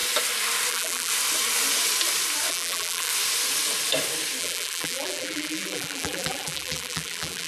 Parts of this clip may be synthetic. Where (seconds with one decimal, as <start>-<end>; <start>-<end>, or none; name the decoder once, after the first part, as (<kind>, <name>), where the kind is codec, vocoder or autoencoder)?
0.7-1.1 (vocoder, BigVGAN v2); 2.5-3.1; 4.4-7.5